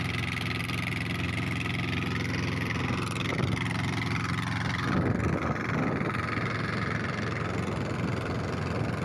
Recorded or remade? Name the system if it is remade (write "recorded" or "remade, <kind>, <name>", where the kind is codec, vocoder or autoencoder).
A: recorded